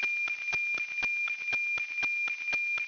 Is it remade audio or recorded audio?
recorded